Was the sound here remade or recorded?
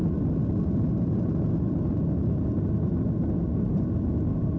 recorded